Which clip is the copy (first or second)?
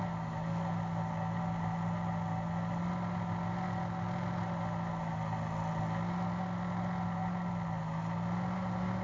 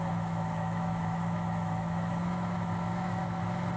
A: second